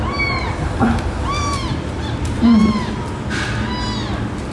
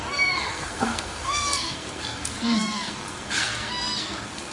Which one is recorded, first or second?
first